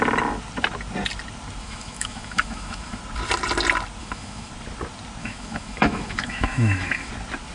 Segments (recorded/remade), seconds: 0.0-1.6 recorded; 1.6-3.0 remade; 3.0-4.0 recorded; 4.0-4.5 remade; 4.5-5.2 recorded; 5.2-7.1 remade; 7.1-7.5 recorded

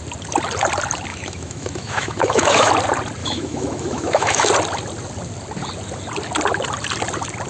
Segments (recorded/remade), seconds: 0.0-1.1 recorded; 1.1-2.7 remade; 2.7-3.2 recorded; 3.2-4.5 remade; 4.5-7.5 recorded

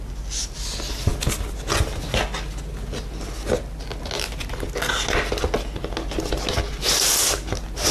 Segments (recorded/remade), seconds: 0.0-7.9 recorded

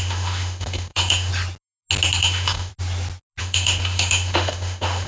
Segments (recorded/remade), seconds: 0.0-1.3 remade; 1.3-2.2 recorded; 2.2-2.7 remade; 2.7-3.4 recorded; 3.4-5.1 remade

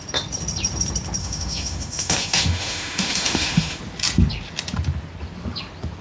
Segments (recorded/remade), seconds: 0.0-1.2 recorded; 1.2-3.8 remade; 3.8-6.0 recorded

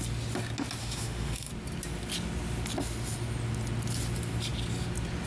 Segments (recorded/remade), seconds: 0.0-0.8 recorded; 0.8-1.5 remade; 1.5-5.3 recorded

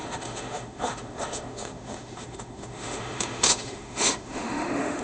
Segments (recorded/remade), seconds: 0.0-5.0 remade